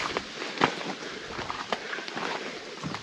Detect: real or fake real